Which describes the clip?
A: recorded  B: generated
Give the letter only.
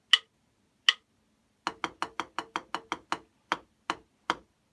A